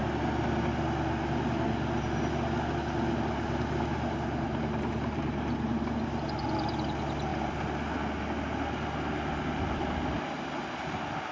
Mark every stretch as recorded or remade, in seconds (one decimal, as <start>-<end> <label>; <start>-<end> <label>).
0.0-11.3 recorded